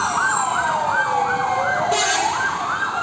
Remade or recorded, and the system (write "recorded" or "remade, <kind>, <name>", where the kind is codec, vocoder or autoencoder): recorded